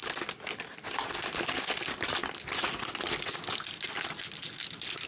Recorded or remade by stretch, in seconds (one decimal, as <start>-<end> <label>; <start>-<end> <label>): 0.0-5.1 recorded